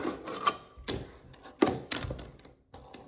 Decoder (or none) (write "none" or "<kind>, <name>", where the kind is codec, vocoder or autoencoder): none